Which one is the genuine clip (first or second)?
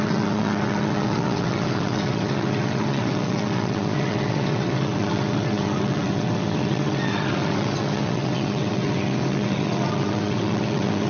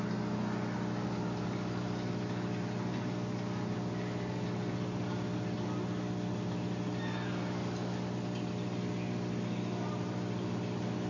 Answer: second